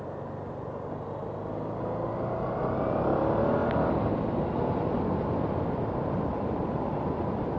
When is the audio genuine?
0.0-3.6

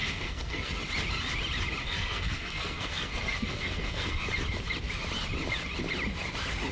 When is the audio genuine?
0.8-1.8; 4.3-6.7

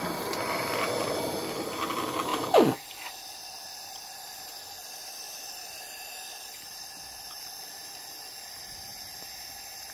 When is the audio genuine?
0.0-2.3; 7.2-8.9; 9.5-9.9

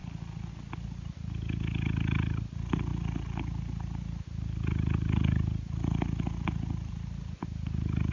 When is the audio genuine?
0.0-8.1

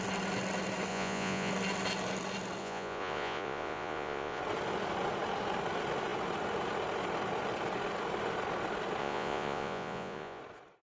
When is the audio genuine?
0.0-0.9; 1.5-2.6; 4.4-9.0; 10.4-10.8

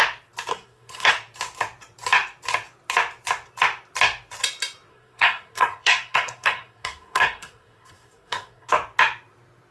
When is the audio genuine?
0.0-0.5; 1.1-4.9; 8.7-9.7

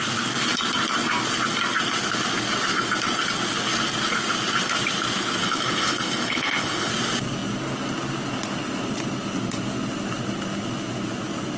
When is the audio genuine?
0.0-5.4; 6.9-11.6

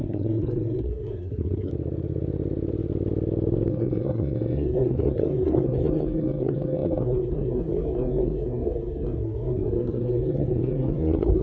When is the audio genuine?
1.7-3.7